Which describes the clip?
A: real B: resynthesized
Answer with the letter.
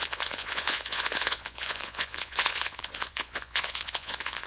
B